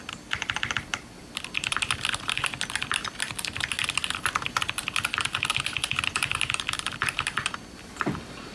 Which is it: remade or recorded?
recorded